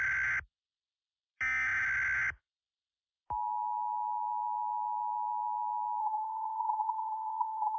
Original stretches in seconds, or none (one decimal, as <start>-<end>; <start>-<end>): 0.0-6.0